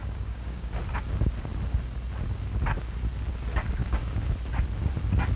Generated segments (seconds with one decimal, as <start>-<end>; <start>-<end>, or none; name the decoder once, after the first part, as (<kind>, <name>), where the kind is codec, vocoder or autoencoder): 0.0-0.7 (codec, DAC); 3.8-4.3